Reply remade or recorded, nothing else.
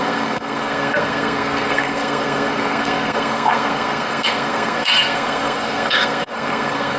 remade